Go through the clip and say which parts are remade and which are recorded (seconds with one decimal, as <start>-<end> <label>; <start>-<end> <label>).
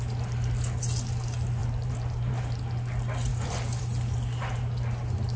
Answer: 0.0-1.6 recorded; 1.6-2.4 remade; 2.4-3.3 recorded; 3.3-3.8 remade; 3.8-5.4 recorded